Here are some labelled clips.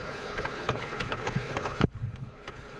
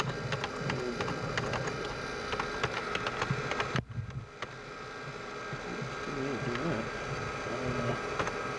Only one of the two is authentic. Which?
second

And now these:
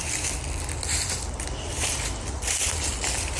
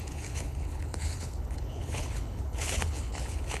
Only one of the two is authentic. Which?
first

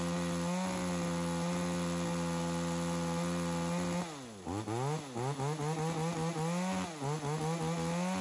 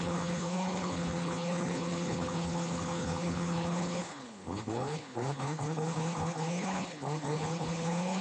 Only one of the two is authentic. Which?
first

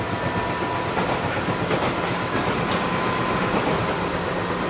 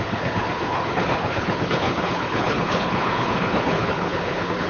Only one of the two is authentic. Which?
first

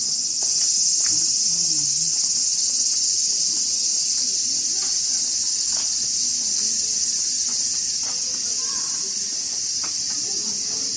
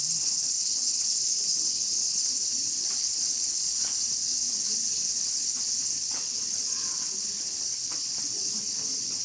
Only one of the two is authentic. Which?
first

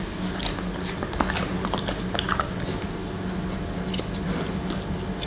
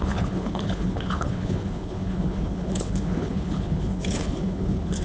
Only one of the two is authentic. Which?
first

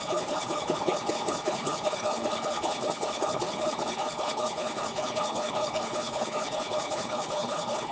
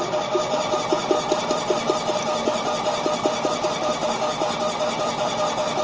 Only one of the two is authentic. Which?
second